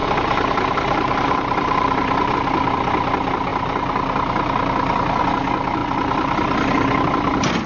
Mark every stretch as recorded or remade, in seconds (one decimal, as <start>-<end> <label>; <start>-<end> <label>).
0.0-2.3 remade; 2.3-7.7 recorded